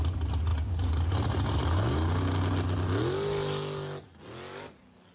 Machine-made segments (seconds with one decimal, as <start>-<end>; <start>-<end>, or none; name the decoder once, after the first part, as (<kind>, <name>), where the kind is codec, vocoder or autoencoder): none